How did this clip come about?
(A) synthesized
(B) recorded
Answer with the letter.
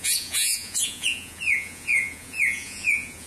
A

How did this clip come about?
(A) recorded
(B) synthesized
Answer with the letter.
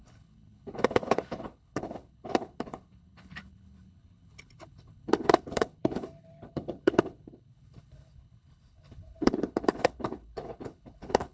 B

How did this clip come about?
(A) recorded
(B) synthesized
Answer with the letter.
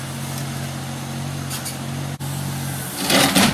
A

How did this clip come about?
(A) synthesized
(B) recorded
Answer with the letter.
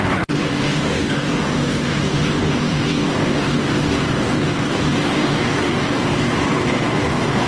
A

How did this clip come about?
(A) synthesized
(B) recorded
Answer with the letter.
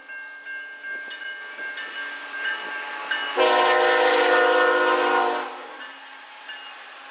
B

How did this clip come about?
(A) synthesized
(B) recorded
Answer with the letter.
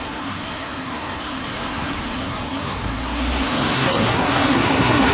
A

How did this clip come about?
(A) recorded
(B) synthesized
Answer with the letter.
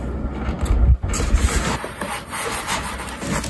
A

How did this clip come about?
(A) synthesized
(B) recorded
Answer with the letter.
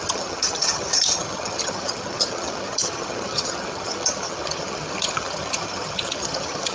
A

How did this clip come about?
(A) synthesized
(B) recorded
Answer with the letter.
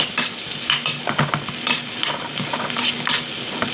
B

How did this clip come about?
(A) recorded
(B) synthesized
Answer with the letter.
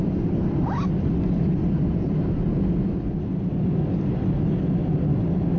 A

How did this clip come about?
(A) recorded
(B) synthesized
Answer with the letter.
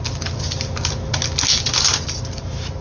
A